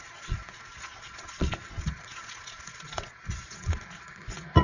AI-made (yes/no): yes